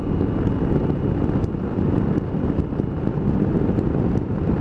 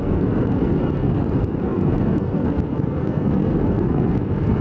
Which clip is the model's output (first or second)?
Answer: second